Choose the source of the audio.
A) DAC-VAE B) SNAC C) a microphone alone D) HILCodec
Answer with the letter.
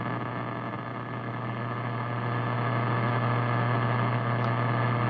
C